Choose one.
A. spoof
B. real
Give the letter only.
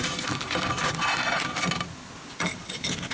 B